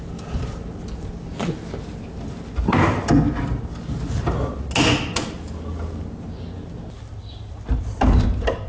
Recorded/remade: recorded